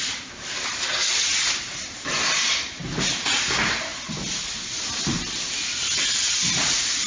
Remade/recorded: recorded